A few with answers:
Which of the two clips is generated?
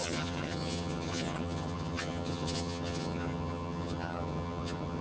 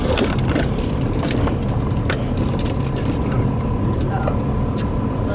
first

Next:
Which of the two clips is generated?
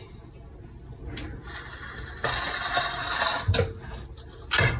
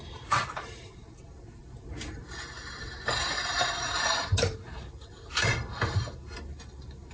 second